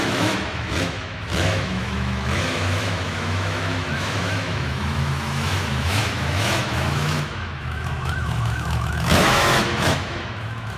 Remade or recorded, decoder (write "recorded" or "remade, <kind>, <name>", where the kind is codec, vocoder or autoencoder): remade, autoencoder, DAC-VAE